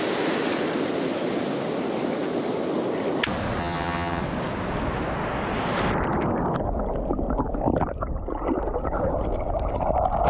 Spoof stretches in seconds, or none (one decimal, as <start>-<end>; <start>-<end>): 3.6-4.2